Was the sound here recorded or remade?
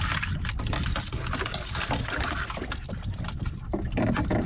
recorded